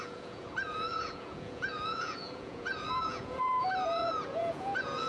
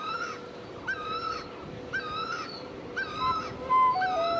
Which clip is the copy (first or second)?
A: first